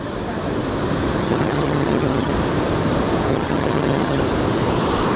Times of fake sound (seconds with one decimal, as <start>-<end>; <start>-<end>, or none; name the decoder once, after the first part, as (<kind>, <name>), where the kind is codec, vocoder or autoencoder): 1.2-2.3 (vocoder, HiFi-GAN); 3.3-4.2